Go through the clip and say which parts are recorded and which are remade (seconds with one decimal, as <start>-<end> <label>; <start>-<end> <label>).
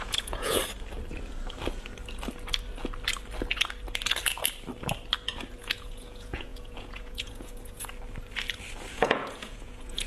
0.0-0.6 remade; 0.6-5.6 recorded; 5.6-7.9 remade; 7.9-8.9 recorded; 8.9-10.1 remade